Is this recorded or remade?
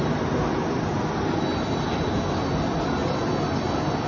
recorded